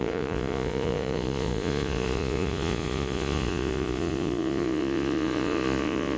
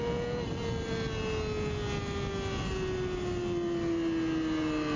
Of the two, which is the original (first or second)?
second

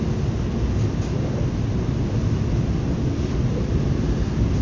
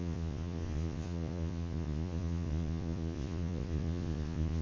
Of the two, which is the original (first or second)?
first